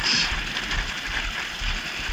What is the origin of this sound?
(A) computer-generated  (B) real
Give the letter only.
B